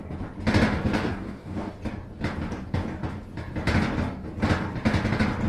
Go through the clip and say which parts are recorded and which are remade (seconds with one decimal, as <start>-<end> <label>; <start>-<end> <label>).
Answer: 0.0-0.9 recorded; 0.9-1.7 remade; 1.7-5.5 recorded